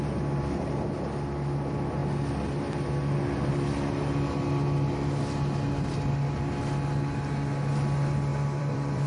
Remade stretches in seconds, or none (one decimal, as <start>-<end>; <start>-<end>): 8.3-9.1